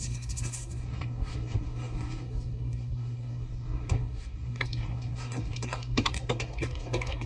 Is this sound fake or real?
fake